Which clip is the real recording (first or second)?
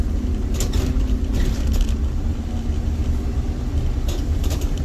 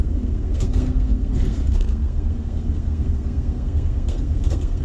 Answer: first